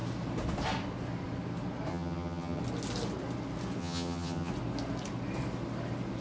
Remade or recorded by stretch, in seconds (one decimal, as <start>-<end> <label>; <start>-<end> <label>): 0.0-1.9 recorded; 1.9-2.6 remade; 2.6-3.8 recorded; 3.8-4.5 remade; 4.5-6.2 recorded